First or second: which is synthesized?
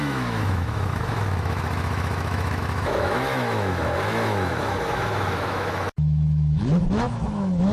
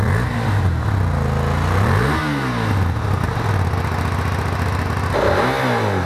first